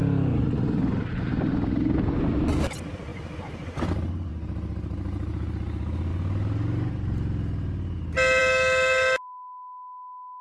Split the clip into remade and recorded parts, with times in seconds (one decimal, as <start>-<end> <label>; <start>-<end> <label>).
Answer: 0.0-10.4 recorded